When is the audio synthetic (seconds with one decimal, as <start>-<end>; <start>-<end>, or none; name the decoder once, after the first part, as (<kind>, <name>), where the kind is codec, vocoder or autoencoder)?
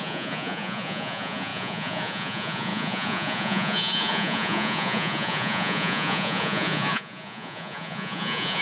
0.0-8.6 (vocoder, Vocos)